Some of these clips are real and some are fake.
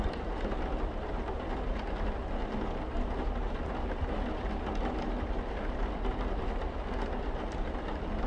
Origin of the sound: real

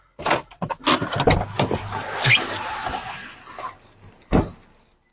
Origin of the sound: real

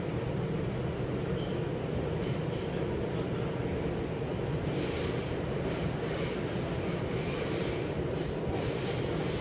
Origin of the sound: real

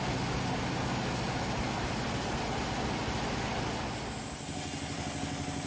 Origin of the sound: real